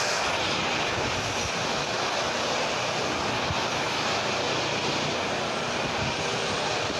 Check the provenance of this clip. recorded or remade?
recorded